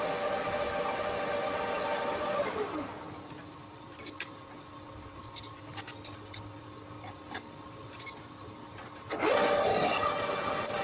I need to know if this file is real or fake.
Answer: real